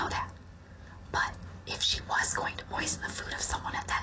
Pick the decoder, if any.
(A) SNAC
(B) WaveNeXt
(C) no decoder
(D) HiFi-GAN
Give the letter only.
C